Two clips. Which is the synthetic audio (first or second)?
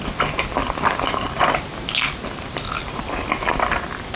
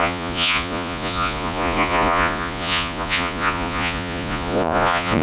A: second